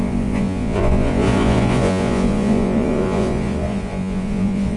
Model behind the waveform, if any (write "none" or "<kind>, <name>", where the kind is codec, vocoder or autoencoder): vocoder, Vocos